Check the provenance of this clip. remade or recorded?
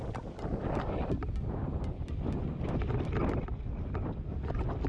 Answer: remade